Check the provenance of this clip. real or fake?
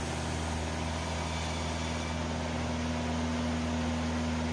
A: real